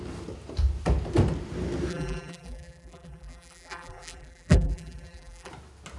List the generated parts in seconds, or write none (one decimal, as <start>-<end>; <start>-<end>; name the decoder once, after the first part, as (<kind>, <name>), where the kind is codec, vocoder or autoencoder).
1.9-5.5 (vocoder, BigVGAN v2)